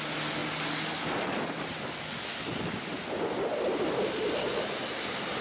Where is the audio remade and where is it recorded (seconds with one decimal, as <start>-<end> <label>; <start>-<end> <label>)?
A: 0.0-5.4 recorded